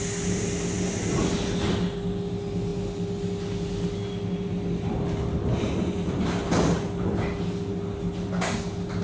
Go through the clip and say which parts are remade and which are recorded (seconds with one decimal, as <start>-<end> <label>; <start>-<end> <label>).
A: 0.0-9.0 recorded